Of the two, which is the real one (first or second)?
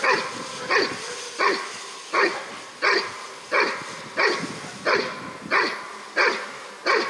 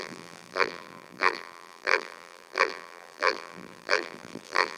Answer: first